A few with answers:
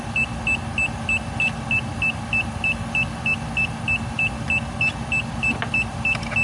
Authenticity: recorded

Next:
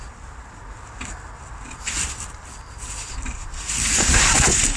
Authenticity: recorded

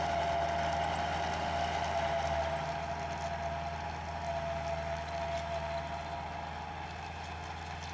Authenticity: recorded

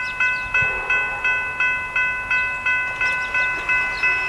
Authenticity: recorded